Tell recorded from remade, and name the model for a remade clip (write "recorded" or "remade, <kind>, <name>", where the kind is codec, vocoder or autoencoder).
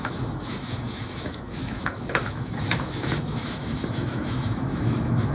remade, autoencoder, DAC-VAE